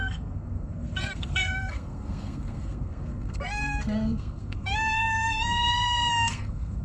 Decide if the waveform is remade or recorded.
remade